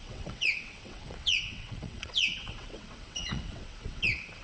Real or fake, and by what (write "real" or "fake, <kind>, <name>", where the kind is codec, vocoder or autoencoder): fake, vocoder, WaveNeXt